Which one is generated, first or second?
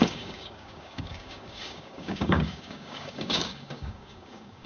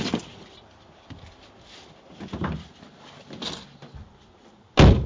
first